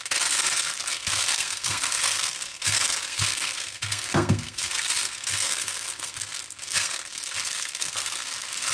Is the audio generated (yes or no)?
yes